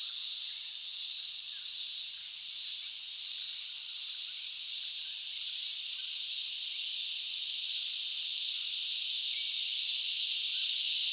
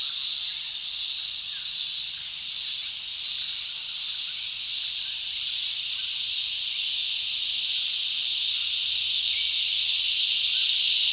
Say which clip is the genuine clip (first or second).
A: second